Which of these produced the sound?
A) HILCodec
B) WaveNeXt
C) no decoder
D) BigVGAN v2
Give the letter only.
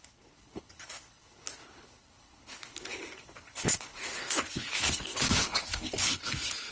A